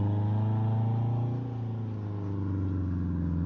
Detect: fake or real real